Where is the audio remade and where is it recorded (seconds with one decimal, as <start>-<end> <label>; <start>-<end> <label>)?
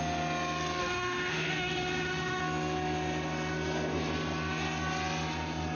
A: 0.0-0.8 recorded; 0.8-2.4 remade; 2.4-5.7 recorded